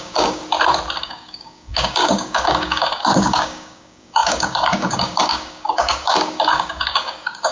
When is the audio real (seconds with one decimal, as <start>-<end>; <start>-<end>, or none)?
0.4-1.0